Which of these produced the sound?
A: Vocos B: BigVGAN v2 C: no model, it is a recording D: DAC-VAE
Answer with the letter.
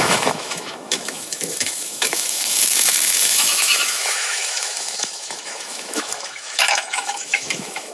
D